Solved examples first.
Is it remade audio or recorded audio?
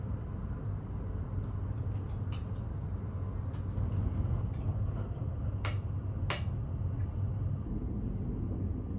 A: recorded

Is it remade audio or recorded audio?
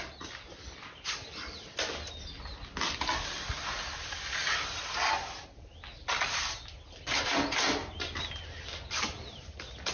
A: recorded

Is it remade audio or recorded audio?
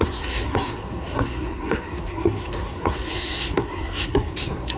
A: remade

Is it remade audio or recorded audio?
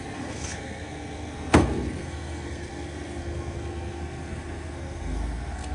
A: remade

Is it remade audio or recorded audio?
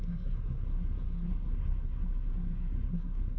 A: remade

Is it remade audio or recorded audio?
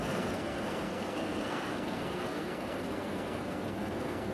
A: remade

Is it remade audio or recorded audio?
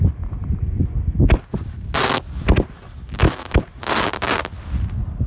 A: recorded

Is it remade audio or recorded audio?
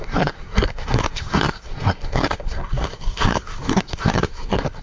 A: remade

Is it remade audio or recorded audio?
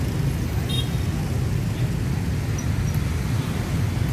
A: recorded